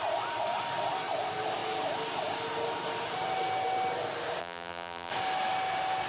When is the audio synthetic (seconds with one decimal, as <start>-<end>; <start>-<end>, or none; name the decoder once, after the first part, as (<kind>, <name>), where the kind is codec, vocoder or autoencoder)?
4.4-5.1 (vocoder, BigVGAN v2)